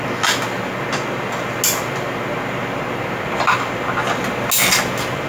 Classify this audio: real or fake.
real